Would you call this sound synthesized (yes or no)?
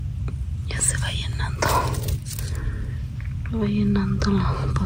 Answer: no